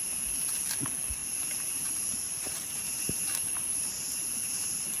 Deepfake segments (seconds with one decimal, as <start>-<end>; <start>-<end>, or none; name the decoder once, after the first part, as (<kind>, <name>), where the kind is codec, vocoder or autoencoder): 1.2-4.2 (vocoder, BigVGAN v2)